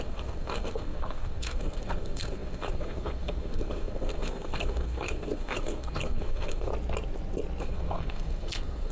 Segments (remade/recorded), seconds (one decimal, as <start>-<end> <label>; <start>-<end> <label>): 0.0-6.7 remade; 6.7-7.6 recorded; 7.6-8.9 remade